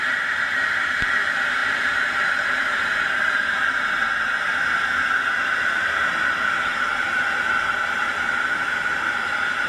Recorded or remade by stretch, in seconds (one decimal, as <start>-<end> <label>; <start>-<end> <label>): 0.0-9.7 remade